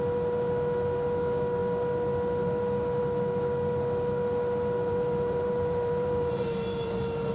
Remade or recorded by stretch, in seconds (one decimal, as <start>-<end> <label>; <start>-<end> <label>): 0.0-4.9 recorded; 4.9-7.3 remade